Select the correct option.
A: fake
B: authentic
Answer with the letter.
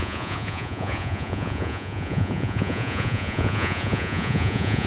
A